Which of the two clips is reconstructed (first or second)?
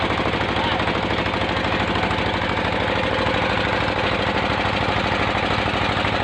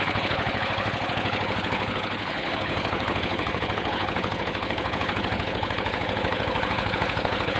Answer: second